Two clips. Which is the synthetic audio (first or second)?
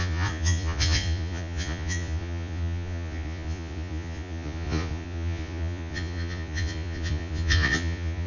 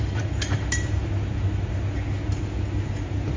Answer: first